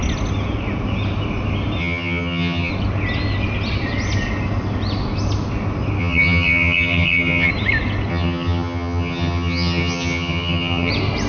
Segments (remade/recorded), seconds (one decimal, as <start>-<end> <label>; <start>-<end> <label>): 0.0-1.8 recorded; 1.8-2.7 remade; 2.7-6.0 recorded; 6.0-7.5 remade; 7.5-8.1 recorded; 8.1-10.9 remade; 10.9-11.3 recorded